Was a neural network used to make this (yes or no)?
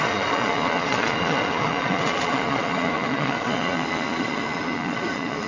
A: yes